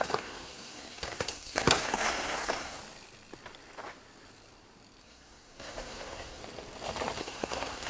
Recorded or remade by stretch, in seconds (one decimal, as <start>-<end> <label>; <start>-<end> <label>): 0.0-2.8 remade; 2.8-5.0 recorded; 5.0-6.4 remade; 6.4-7.2 recorded; 7.2-7.9 remade

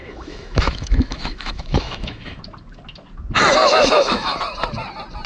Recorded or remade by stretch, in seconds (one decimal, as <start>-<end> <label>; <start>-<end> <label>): 0.0-2.4 remade; 2.4-3.6 recorded; 3.6-4.4 remade; 4.4-5.3 recorded

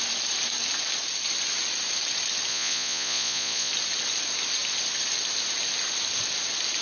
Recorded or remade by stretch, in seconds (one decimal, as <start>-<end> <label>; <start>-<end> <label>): 0.0-2.5 recorded; 2.5-3.7 remade; 3.7-6.8 recorded